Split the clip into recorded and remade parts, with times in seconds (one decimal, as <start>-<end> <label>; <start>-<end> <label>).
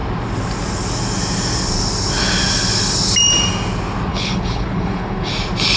0.0-4.1 recorded; 4.1-5.3 remade; 5.3-5.8 recorded